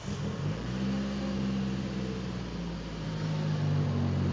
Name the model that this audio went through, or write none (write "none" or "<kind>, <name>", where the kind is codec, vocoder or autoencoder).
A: none